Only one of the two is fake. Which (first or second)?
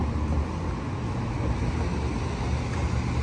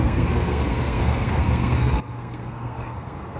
second